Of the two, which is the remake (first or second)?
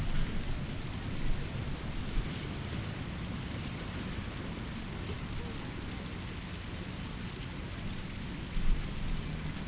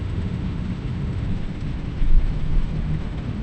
second